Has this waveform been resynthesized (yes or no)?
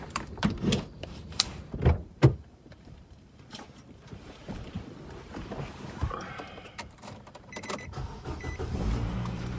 yes